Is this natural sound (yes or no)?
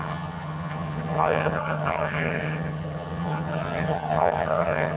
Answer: no